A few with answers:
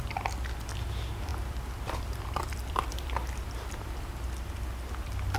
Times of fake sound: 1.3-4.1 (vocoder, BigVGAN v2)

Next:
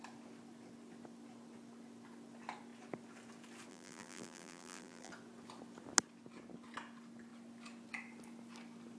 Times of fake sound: 3.7-5.1 (vocoder, BigVGAN v2)

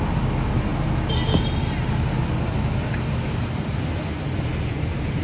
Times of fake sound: 4.5-5.2 (vocoder, BigVGAN v2)

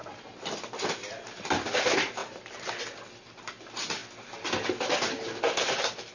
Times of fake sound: 2.2-2.7 (vocoder, BigVGAN v2)

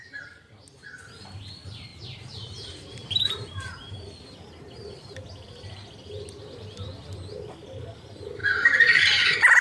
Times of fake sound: 1.9-4.1 (vocoder, BigVGAN v2); 8.4-9.0

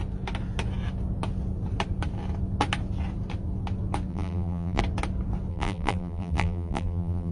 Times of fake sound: 4.1-4.8 (vocoder, BigVGAN v2); 5.5-7.3